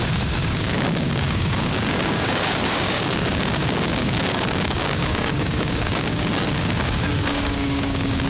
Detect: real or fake fake